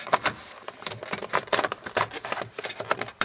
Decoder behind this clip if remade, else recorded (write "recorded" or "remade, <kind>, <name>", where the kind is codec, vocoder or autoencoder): remade, vocoder, BigVGAN v2